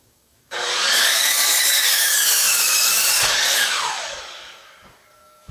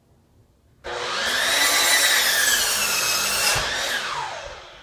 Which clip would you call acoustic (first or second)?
second